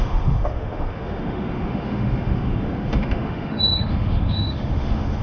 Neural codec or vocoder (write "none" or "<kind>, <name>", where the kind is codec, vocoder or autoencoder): autoencoder, DAC-VAE